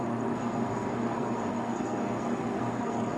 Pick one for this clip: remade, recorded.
remade